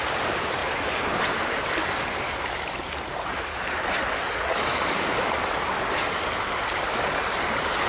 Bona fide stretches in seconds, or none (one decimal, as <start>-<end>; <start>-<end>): 0.0-7.9